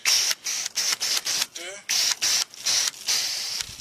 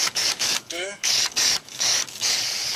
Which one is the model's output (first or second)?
second